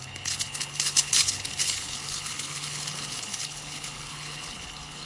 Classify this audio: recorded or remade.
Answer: remade